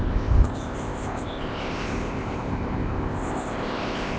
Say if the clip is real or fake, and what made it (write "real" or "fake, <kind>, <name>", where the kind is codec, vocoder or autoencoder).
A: fake, codec, ZipCodec